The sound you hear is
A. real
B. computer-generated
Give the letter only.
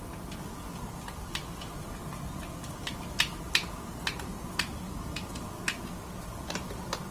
A